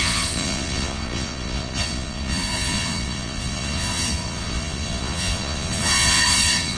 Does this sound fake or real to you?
fake